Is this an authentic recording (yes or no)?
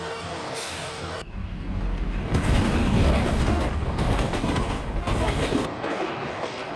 no